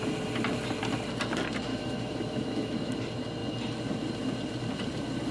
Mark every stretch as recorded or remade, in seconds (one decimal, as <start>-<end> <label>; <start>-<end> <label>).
0.0-1.7 recorded; 1.7-2.9 remade; 2.9-5.3 recorded